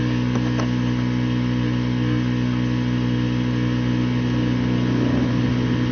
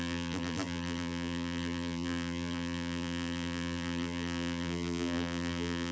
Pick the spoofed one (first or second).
second